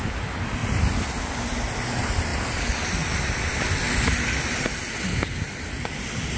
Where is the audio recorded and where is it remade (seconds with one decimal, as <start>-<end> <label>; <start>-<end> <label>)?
0.0-0.6 recorded; 0.6-1.1 remade; 1.1-6.4 recorded